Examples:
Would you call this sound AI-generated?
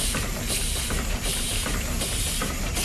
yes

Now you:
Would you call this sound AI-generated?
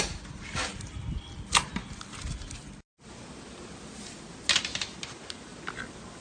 no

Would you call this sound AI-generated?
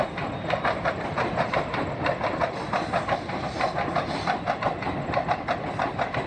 no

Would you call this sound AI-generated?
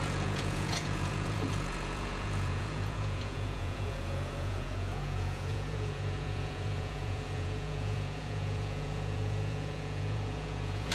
yes